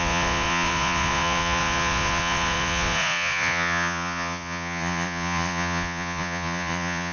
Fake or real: fake